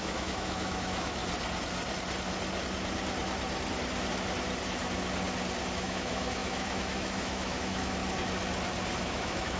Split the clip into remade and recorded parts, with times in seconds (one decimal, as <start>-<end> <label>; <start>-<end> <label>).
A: 0.0-1.2 remade; 1.2-5.7 recorded; 5.7-8.0 remade; 8.0-9.0 recorded; 9.0-9.6 remade